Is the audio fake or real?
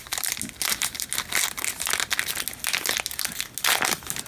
real